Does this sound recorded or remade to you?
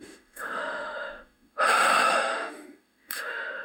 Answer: remade